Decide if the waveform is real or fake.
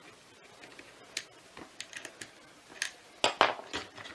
real